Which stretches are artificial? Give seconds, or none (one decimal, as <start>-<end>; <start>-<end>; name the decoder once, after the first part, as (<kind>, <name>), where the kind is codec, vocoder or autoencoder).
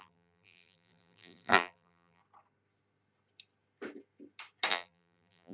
0.0-2.2 (vocoder, BigVGAN v2); 4.7-5.5